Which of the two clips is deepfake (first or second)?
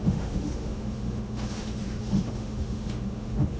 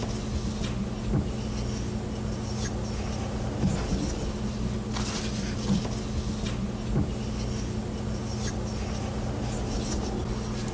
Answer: first